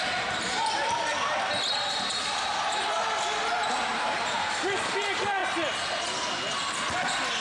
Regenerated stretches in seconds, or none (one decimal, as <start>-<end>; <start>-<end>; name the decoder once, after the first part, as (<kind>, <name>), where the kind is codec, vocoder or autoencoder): 0.0-1.1 (vocoder, BigVGAN v2); 1.9-2.5; 3.7-5.4